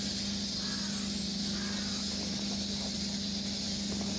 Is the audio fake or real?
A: real